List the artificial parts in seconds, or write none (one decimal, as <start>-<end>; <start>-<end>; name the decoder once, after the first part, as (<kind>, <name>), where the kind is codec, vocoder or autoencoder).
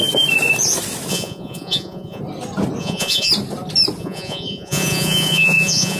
1.1-2.2 (vocoder, Vocos); 2.8-3.3; 4.0-6.0